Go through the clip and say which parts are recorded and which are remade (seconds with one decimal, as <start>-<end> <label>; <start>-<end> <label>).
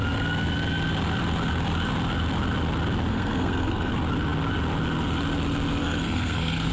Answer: 0.0-3.1 recorded; 3.1-3.9 remade; 3.9-5.8 recorded; 5.8-6.7 remade